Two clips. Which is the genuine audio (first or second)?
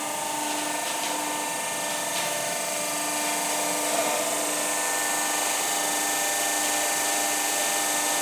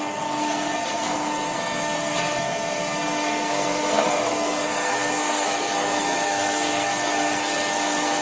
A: first